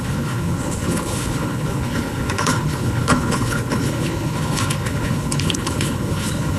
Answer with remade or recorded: remade